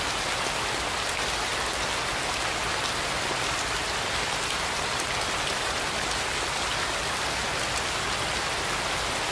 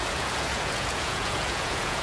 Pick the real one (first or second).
first